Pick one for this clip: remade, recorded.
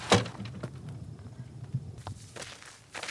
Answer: recorded